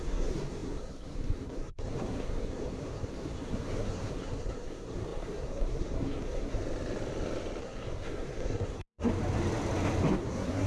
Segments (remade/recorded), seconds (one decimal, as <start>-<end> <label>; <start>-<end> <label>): 0.0-6.6 remade; 6.6-7.6 recorded; 7.6-9.1 remade; 9.1-10.1 recorded; 10.1-10.7 remade